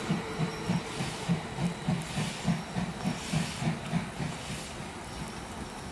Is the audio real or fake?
real